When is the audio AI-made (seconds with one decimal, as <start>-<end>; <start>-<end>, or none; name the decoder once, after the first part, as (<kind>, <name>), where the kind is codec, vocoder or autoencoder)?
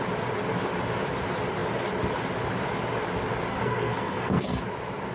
3.5-4.6 (codec, SNAC)